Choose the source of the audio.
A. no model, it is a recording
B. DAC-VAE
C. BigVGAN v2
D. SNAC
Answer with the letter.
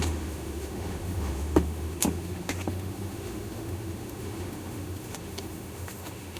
B